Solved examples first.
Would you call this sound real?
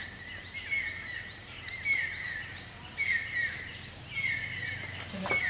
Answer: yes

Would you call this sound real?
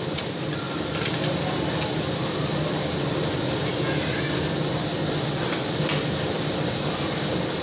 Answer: yes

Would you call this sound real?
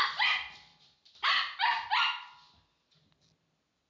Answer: yes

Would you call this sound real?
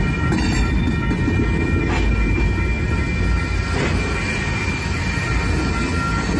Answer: yes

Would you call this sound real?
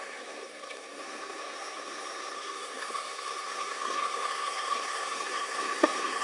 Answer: no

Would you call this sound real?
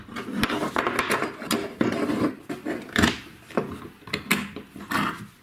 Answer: yes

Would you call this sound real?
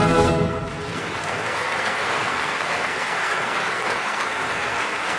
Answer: no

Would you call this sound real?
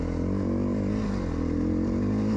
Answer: yes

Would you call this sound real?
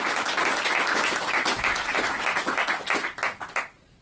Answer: yes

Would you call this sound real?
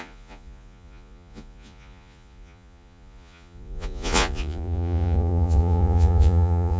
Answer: no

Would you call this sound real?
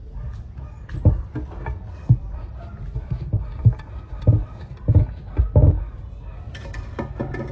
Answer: yes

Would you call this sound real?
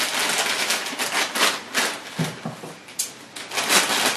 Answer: yes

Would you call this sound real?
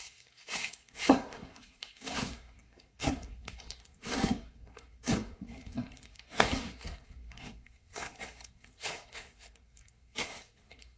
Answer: no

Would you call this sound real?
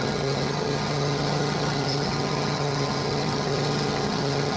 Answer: no